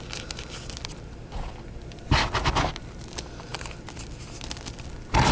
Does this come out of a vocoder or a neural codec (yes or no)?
no